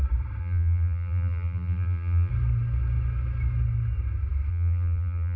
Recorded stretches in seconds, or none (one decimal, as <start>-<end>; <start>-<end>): 0.0-0.4; 2.3-4.5